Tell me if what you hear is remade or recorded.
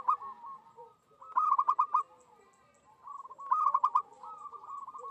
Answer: recorded